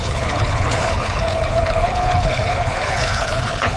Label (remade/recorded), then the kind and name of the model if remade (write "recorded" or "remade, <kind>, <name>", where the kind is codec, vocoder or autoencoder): remade, codec, HILCodec